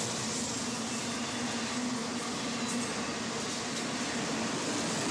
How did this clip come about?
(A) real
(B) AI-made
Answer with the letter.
A